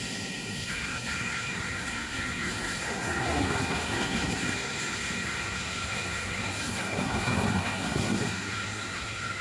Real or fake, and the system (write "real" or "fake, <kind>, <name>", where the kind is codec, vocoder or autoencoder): fake, codec, SNAC